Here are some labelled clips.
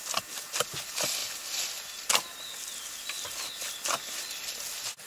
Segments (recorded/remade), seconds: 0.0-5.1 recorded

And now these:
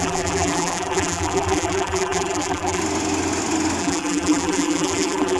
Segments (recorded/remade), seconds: 0.0-2.8 remade; 2.8-3.8 recorded; 3.8-5.4 remade

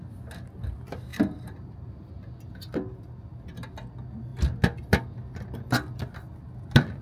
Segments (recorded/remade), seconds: 0.0-1.1 recorded; 1.1-2.1 remade; 2.1-7.0 recorded

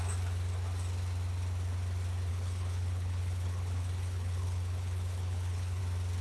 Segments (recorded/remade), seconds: 0.0-2.3 recorded; 2.3-5.8 remade; 5.8-6.2 recorded

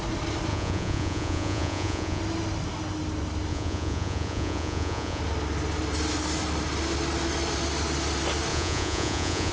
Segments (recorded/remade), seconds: 0.0-0.5 recorded; 0.5-2.2 remade; 2.2-3.5 recorded; 3.5-5.2 remade; 5.2-8.5 recorded; 8.5-9.5 remade

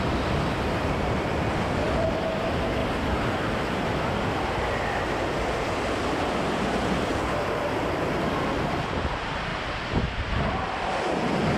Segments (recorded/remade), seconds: 0.0-2.8 remade; 2.8-5.4 recorded; 5.4-9.5 remade; 9.5-10.4 recorded; 10.4-11.6 remade